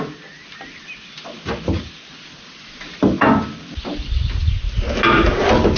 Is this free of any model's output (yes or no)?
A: yes